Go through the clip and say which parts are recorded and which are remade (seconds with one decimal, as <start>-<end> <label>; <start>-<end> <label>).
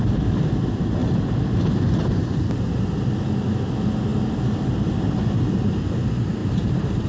0.0-6.4 recorded; 6.4-7.1 remade